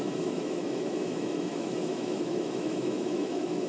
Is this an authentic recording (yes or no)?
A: no